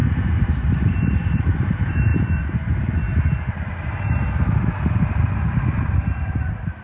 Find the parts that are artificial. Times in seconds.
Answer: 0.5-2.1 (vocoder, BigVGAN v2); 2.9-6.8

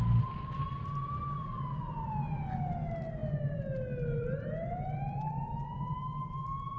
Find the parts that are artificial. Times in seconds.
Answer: none

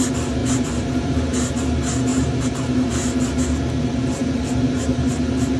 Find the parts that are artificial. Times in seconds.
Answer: 0.4-1.6 (vocoder, BigVGAN v2); 2.1-2.9; 4.2-5.1

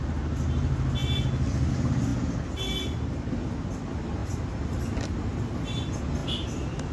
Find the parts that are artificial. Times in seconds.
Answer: 4.2-5.8 (vocoder, BigVGAN v2)

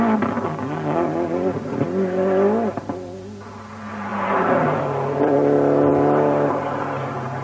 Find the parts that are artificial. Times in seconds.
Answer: none